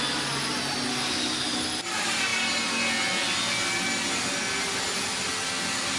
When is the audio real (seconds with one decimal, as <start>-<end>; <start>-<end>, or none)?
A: 0.0-6.0